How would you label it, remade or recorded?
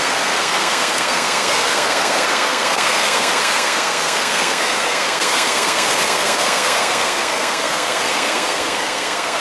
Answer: remade